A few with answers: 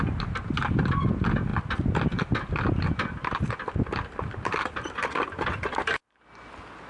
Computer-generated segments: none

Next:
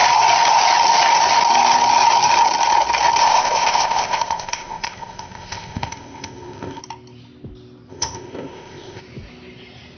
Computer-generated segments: 3.2-6.8 (codec, ZipCodec); 7.9-9.0

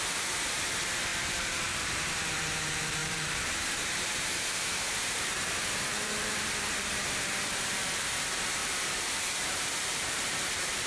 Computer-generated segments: 0.0-10.9 (vocoder, BigVGAN v2)

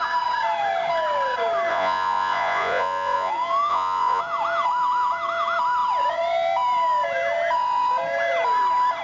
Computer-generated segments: 1.7-3.3 (vocoder, Vocos); 3.7-4.2